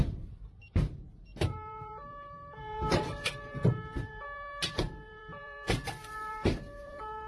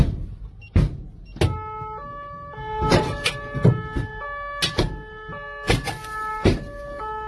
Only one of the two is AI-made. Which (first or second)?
first